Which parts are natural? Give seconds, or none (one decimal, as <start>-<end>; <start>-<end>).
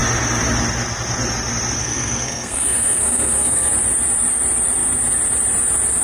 0.0-1.8; 3.7-6.0